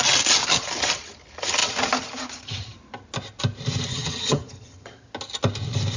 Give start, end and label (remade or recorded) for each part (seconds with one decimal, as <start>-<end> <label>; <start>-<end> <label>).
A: 0.0-3.9 recorded; 3.9-5.1 remade; 5.1-6.0 recorded